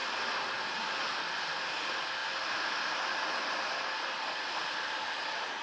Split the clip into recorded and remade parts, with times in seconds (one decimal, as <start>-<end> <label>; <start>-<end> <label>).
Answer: 0.0-5.6 recorded